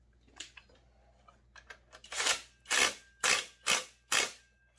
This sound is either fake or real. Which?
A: real